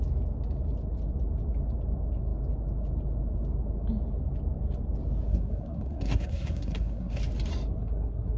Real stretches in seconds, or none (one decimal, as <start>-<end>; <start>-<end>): 0.0-5.3; 7.2-7.8